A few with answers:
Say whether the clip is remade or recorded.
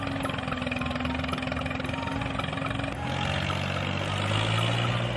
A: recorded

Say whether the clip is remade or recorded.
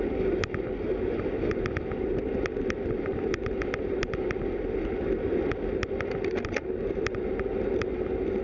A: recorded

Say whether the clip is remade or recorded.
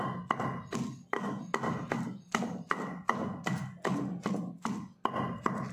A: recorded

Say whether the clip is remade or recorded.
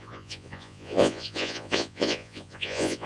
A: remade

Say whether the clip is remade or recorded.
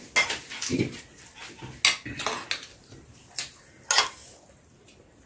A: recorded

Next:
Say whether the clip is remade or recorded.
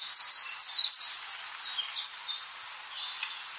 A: recorded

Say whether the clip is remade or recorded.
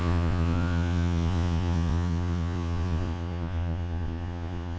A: remade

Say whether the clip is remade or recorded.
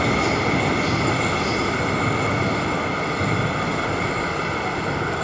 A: recorded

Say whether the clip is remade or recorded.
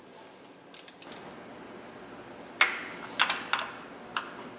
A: recorded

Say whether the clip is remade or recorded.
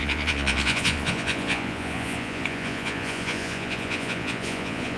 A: remade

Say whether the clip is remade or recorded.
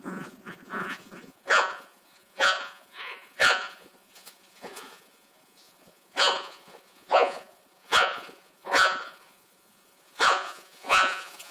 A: remade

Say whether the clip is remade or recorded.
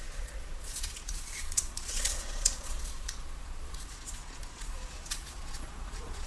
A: remade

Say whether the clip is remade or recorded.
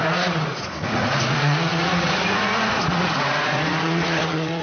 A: remade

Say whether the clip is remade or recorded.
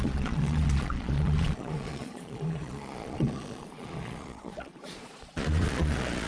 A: remade